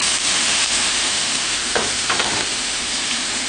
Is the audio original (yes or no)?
no